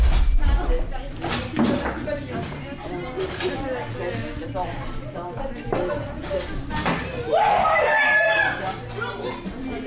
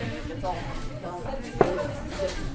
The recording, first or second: first